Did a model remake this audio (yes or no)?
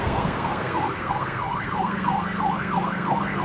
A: yes